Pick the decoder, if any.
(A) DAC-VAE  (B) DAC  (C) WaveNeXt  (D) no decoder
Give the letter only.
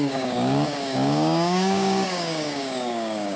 B